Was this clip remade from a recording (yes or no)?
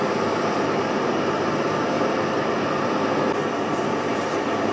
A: no